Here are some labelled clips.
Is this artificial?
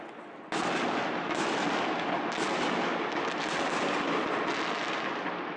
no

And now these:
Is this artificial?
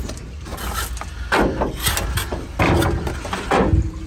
no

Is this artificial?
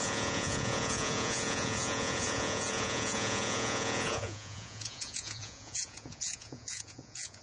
yes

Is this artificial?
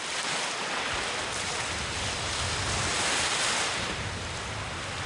no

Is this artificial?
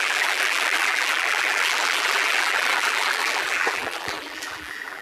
yes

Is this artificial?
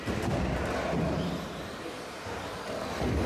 no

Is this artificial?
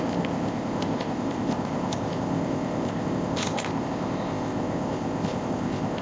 yes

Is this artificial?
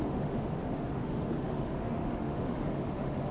yes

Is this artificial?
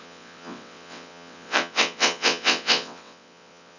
yes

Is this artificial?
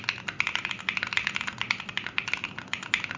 no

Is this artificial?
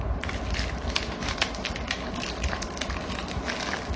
no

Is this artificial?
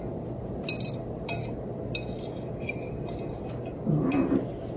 no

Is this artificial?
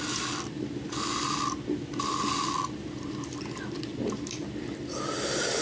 no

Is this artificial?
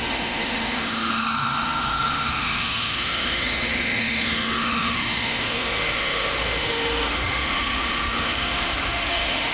yes